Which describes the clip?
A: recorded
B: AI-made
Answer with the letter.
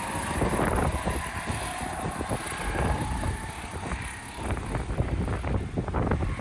A